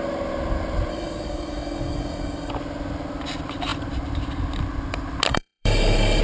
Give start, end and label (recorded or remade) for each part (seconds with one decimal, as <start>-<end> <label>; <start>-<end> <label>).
0.0-0.9 recorded; 0.9-2.5 remade; 2.5-5.3 recorded; 5.3-6.2 remade